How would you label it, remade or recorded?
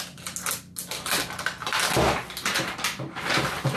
recorded